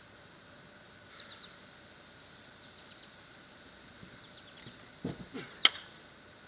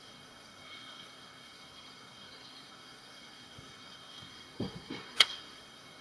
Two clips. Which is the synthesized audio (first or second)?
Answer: second